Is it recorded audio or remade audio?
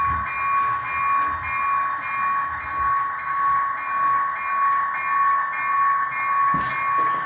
recorded